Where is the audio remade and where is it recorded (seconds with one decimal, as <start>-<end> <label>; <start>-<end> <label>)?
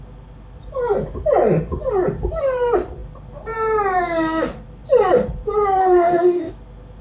0.0-5.8 recorded; 5.8-6.5 remade; 6.5-7.0 recorded